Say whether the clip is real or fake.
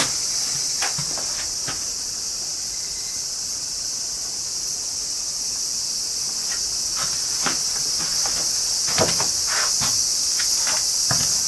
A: real